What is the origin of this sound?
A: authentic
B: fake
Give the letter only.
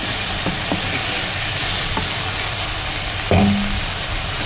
A